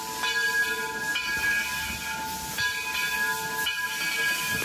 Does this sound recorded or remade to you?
recorded